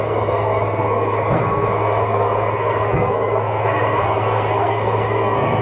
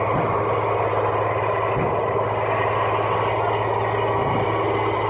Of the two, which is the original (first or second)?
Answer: second